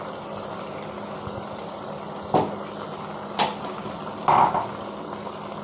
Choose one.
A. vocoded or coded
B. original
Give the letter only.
B